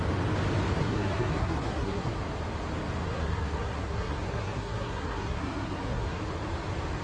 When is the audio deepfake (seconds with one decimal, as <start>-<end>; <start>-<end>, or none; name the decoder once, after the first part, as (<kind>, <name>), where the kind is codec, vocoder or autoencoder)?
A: 0.8-2.2 (codec, SNAC); 3.0-6.2